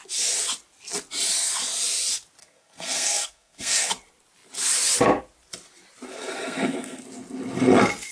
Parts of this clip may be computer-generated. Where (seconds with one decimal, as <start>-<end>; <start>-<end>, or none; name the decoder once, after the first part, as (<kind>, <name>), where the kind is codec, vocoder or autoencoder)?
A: 2.4-3.9 (codec, SNAC); 6.1-7.0